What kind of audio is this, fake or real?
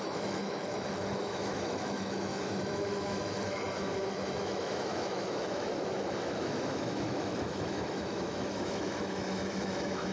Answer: fake